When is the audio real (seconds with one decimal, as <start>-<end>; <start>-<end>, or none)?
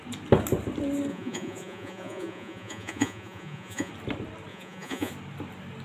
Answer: 0.0-1.1; 3.9-4.5; 5.1-5.8